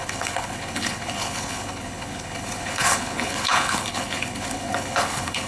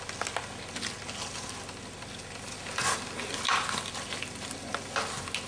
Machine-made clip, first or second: first